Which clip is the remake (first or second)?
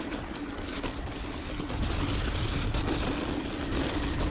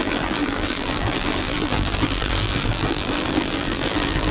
second